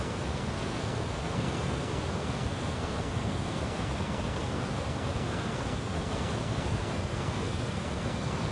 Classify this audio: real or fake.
fake